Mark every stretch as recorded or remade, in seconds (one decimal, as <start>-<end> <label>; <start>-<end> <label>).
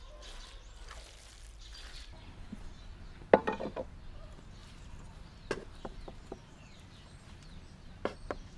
0.0-4.6 recorded; 4.6-6.0 remade; 6.0-6.4 recorded; 6.4-8.6 remade